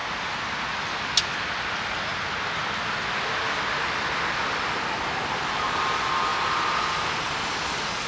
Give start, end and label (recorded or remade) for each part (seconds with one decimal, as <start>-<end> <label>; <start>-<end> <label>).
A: 0.0-8.1 recorded